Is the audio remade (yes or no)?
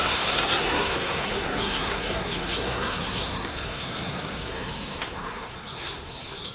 yes